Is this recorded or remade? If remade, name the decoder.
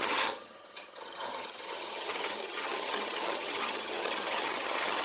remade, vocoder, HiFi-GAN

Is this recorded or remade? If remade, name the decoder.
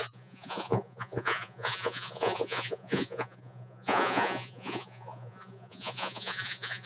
remade, vocoder, Vocos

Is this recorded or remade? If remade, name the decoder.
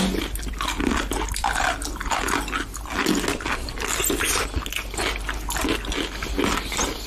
recorded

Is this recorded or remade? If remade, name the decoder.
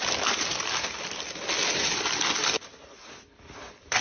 recorded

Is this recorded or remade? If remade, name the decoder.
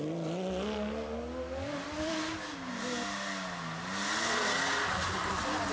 recorded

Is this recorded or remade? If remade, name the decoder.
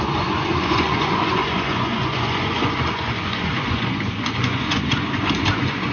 remade, vocoder, Vocos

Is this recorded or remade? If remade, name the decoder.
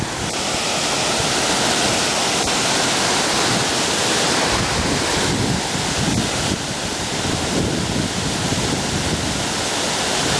recorded